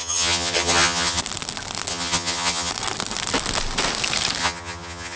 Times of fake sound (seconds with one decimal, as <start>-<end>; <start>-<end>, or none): 0.0-1.2; 1.9-2.7; 4.4-5.2